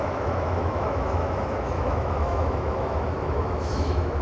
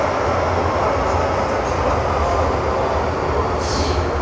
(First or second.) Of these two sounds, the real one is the second